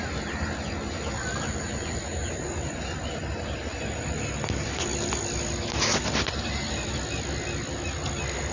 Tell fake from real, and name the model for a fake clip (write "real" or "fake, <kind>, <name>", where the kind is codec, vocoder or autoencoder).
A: real